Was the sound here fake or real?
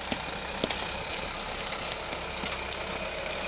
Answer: real